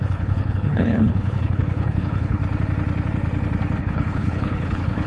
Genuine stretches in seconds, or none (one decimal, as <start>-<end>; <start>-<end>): 2.4-3.8